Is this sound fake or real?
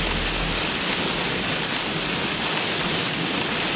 real